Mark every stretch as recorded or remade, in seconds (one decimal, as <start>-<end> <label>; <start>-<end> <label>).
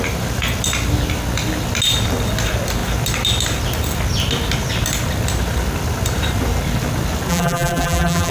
0.0-7.3 recorded; 7.3-8.3 remade